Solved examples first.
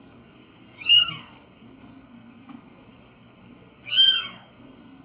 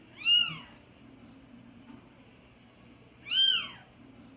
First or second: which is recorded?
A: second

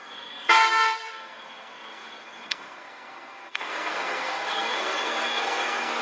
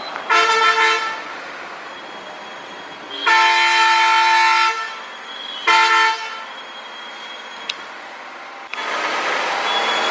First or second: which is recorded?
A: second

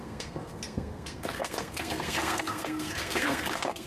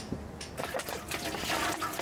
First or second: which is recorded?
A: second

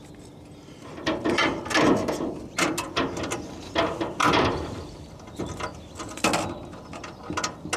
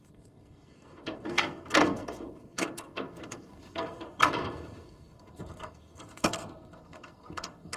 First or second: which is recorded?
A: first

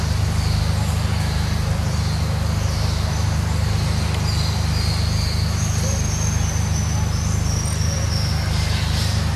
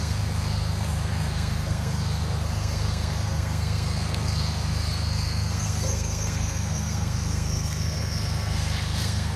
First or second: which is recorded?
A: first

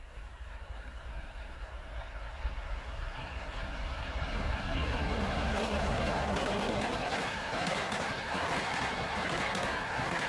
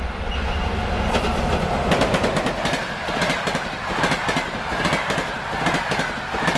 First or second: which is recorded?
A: second